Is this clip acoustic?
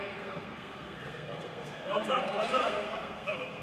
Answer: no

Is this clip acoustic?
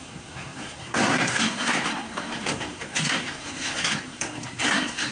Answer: no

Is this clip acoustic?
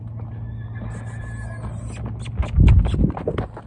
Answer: yes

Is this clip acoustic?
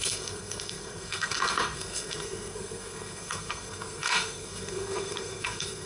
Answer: no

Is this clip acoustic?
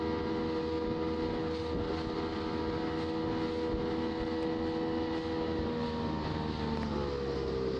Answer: yes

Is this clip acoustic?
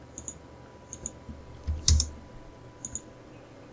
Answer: yes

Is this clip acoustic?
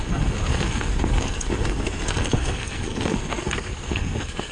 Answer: no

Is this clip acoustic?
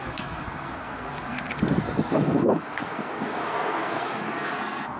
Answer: no